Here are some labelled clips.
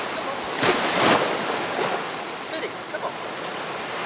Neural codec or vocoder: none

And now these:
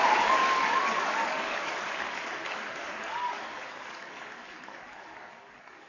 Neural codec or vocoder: codec, DAC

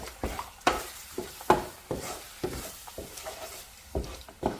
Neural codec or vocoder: vocoder, BigVGAN v2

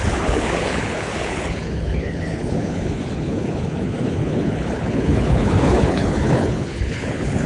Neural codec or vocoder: codec, HILCodec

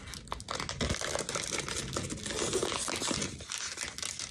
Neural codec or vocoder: none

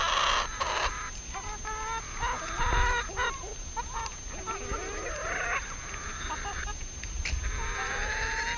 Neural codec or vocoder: none